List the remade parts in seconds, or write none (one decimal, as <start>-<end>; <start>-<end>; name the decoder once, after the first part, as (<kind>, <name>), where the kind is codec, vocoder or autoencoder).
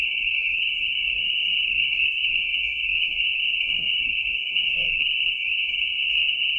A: 0.0-6.6 (codec, SNAC)